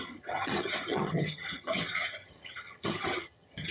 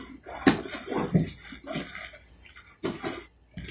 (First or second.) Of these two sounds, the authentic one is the second